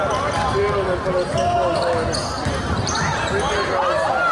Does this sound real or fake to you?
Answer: real